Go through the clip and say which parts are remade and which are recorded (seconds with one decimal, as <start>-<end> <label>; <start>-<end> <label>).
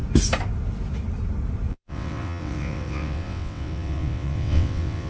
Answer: 0.0-1.7 recorded; 1.7-5.1 remade